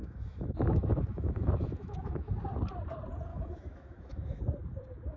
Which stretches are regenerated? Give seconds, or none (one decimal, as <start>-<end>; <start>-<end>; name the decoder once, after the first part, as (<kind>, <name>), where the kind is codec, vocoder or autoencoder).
0.0-2.3 (autoencoder, DAC-VAE); 3.3-4.4